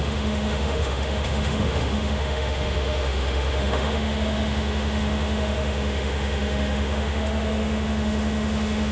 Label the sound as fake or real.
fake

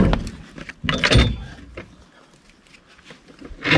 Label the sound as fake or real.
real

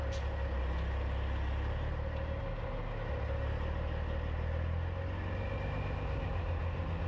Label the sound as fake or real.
real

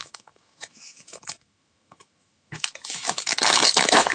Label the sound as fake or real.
fake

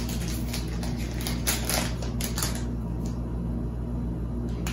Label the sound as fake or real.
real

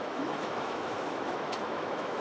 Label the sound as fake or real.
fake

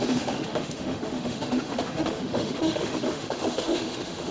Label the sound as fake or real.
fake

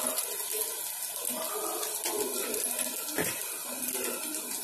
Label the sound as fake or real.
real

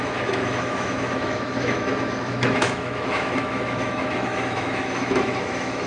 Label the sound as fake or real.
fake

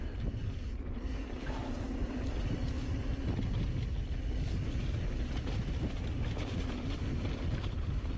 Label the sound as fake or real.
real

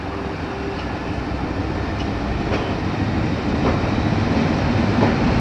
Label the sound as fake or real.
real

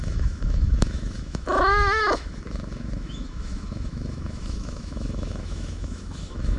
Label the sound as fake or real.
fake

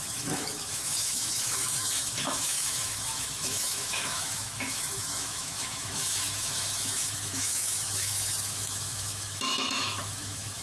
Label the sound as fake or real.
fake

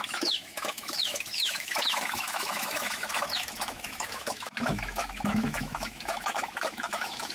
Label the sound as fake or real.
fake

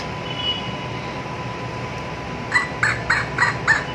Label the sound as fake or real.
real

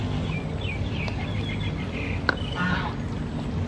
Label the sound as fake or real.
real